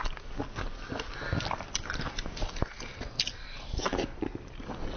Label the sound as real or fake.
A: real